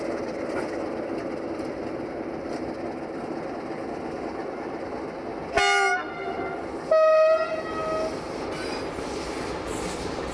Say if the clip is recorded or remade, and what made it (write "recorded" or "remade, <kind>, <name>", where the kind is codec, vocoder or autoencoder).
recorded